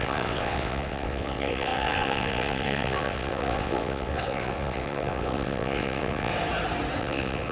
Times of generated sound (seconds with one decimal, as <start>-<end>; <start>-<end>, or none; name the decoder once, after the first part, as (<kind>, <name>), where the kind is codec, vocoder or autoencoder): 0.0-6.3 (vocoder, WaveNeXt); 7.0-7.5